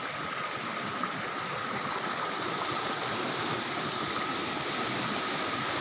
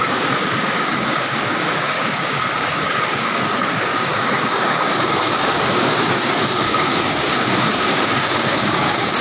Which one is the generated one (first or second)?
second